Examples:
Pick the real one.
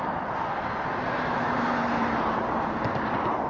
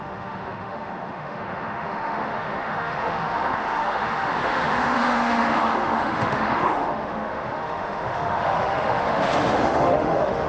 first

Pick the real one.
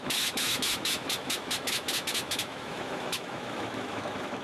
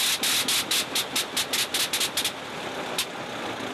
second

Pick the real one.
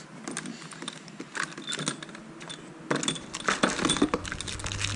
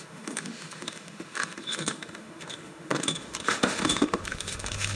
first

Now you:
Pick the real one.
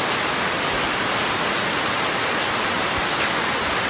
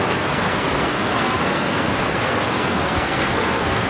first